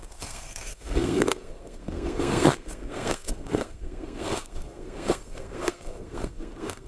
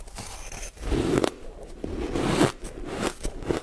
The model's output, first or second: first